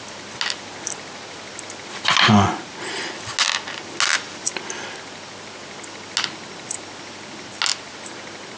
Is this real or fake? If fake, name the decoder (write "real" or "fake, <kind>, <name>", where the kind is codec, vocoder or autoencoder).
real